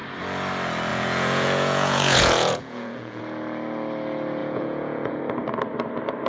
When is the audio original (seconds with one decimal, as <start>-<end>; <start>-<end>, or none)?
0.0-0.9; 3.2-4.4; 5.2-6.3

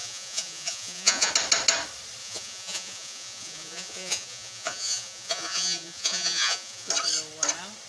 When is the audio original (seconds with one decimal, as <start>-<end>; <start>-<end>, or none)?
1.3-2.2; 6.9-7.9

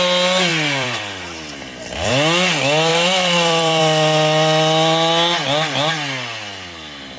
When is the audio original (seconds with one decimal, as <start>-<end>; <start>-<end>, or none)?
0.0-0.5; 2.1-2.9; 3.8-7.2

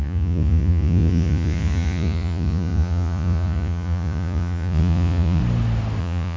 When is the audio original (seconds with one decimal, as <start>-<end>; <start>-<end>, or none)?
5.4-6.0

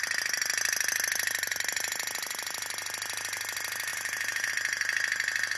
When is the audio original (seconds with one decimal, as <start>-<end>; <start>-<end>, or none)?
0.0-3.9; 4.5-5.6

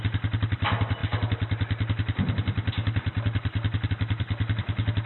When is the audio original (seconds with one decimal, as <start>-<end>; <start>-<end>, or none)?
0.0-5.1